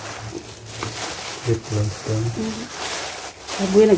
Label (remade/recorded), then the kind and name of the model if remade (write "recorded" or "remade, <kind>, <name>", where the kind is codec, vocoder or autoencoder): recorded